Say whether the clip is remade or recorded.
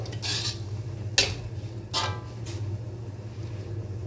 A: recorded